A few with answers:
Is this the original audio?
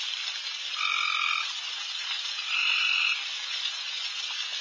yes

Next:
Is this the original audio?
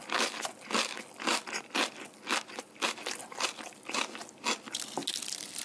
yes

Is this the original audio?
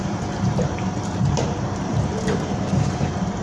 no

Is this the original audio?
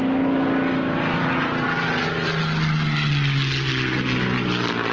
yes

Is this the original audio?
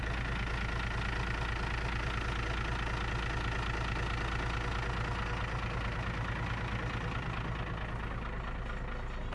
yes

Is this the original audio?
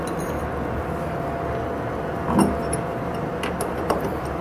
yes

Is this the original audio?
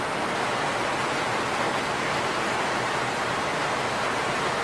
yes